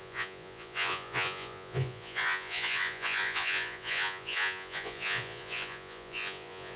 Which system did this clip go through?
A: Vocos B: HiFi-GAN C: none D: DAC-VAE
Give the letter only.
A